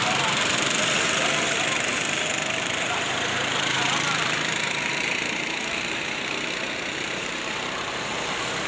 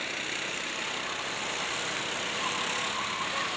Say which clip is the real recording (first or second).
second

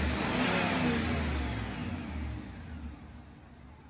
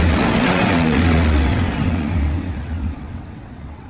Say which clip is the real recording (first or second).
first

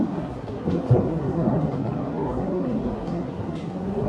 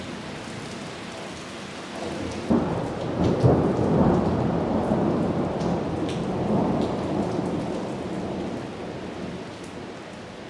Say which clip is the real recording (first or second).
second